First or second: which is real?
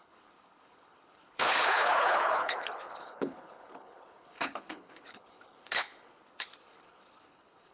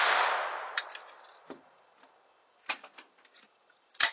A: second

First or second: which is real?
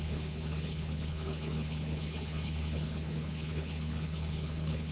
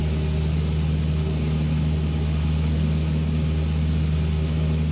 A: second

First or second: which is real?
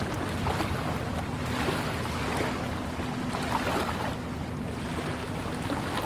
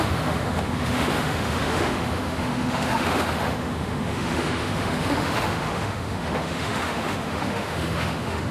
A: first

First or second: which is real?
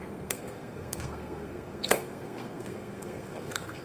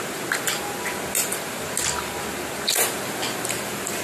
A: second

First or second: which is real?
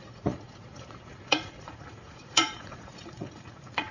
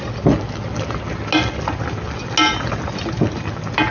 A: second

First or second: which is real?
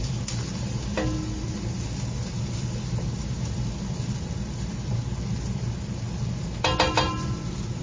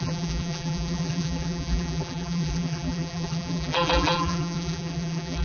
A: first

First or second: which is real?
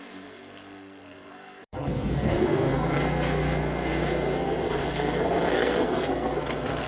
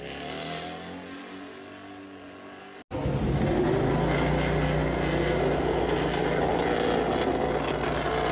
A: second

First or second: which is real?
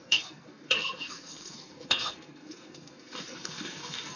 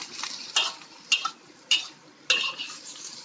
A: second